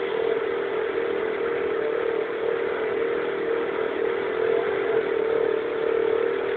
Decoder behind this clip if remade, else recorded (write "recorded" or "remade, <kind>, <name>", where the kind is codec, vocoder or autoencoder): recorded